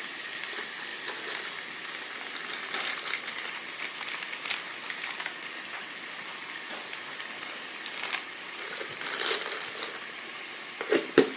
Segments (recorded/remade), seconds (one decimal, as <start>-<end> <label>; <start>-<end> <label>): 0.0-11.4 recorded